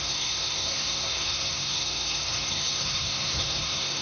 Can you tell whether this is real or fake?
fake